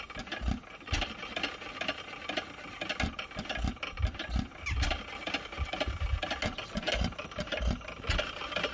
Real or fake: real